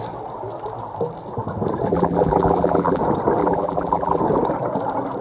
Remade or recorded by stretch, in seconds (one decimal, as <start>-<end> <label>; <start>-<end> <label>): 0.0-1.9 recorded; 1.9-3.0 remade; 3.0-3.4 recorded; 3.4-4.2 remade; 4.2-5.2 recorded